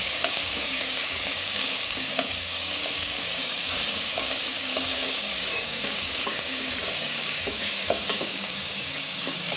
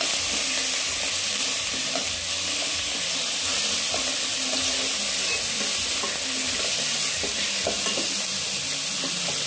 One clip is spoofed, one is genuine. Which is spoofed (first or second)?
first